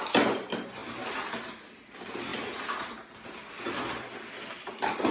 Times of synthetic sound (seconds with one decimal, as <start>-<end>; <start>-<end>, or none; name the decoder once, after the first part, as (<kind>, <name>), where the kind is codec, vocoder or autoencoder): none